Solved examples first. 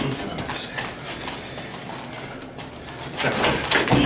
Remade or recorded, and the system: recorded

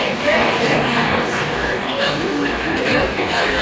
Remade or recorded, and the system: remade, codec, DAC